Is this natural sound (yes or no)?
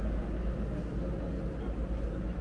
yes